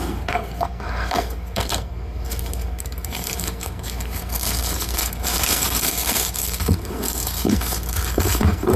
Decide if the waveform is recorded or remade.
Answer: remade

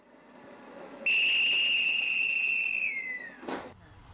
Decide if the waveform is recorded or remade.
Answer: recorded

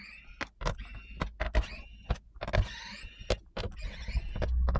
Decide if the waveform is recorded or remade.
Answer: recorded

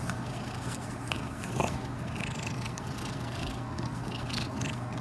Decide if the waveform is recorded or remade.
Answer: remade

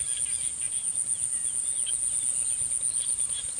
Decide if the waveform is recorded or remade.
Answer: recorded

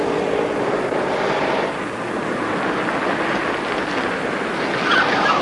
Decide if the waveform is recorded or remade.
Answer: recorded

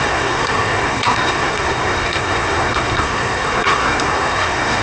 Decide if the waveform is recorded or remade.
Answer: remade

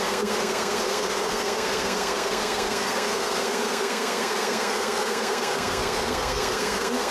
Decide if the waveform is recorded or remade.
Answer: remade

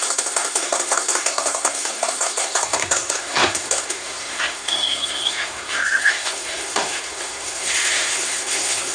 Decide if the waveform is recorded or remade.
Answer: remade